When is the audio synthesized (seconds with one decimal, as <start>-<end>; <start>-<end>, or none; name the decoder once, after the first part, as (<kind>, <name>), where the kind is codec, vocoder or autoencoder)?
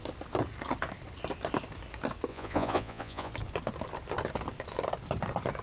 2.3-3.3 (vocoder, Vocos)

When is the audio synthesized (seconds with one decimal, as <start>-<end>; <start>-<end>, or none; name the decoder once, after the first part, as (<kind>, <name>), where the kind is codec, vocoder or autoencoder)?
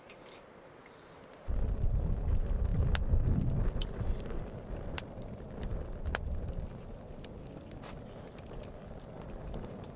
none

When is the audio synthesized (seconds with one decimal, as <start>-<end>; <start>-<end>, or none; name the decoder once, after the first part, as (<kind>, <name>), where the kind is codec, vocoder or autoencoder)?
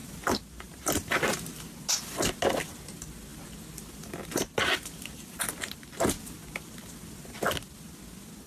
0.0-1.3 (vocoder, BigVGAN v2)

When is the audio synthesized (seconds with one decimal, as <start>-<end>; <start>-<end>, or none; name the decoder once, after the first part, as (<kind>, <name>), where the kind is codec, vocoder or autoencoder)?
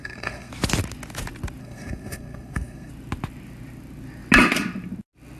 0.0-0.5 (codec, SNAC); 1.6-2.9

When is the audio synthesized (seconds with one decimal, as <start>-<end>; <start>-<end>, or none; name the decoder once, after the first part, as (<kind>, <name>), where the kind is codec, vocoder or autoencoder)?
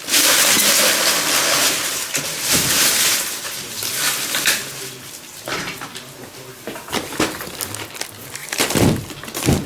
1.6-3.9 (vocoder, BigVGAN v2); 5.5-6.3; 8.4-9.0